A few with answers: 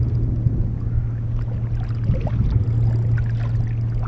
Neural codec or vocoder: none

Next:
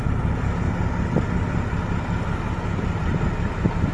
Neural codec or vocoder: none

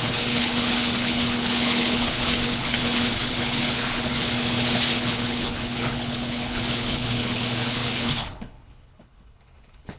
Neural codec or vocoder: codec, HILCodec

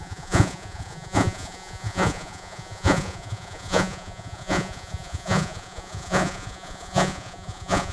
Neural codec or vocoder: vocoder, Vocos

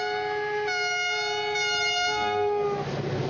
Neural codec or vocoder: none